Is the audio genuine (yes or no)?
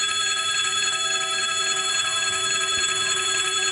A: no